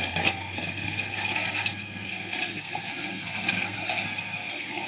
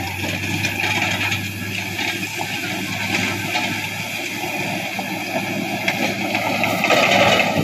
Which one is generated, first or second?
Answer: first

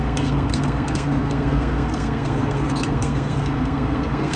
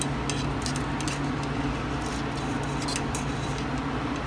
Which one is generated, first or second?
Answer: first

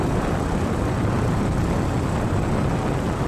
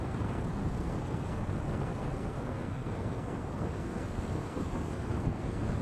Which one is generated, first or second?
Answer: second